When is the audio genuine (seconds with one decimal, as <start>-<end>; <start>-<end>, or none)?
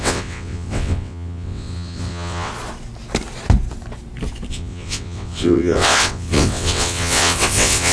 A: 2.5-4.5